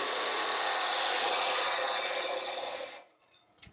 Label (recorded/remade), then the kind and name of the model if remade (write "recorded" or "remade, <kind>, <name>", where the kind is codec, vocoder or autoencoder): remade, vocoder, Vocos